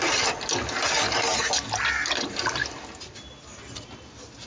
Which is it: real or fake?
real